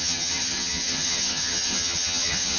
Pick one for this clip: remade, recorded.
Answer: remade